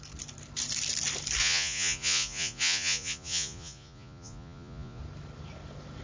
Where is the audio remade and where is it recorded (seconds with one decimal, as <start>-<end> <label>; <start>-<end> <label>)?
0.0-1.4 recorded; 1.4-5.0 remade; 5.0-6.0 recorded